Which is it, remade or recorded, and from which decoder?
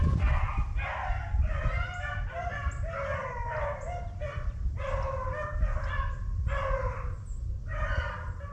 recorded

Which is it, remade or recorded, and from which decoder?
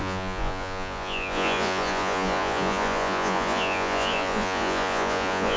remade, vocoder, Vocos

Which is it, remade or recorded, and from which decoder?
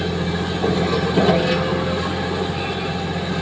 recorded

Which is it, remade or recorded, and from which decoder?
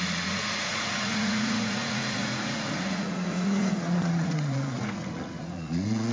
remade, vocoder, Vocos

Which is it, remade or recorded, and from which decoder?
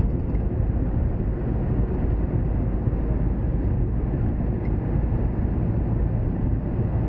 recorded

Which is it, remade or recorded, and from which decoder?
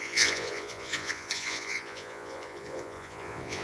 remade, vocoder, Vocos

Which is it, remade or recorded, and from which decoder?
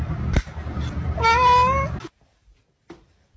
recorded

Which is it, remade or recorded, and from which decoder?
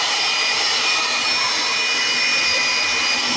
recorded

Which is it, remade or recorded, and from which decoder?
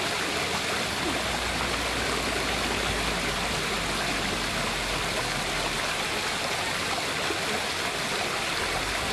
recorded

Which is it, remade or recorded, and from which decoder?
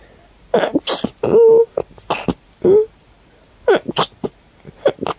recorded